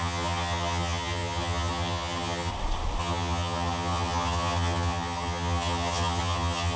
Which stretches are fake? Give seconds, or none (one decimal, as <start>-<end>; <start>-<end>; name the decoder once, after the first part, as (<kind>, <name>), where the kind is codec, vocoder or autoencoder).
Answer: 0.0-2.5 (vocoder, HiFi-GAN); 3.0-6.8